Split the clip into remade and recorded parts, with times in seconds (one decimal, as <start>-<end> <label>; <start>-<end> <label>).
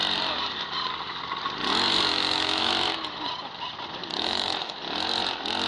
0.0-2.1 recorded; 2.1-2.7 remade; 2.7-4.0 recorded; 4.0-4.7 remade; 4.7-5.7 recorded